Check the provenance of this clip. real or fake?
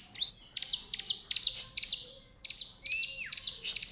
real